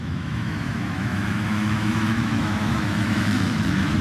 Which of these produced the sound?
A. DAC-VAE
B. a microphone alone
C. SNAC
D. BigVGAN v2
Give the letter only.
A